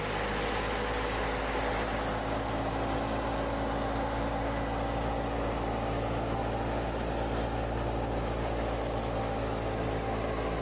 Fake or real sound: real